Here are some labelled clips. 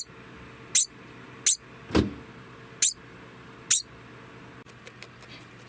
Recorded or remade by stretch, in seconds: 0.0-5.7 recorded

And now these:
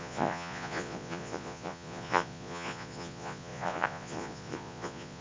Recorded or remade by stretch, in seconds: 0.0-5.2 remade

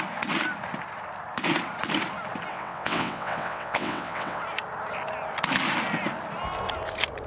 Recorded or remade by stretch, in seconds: 0.0-2.5 recorded; 2.5-4.4 remade; 4.4-7.3 recorded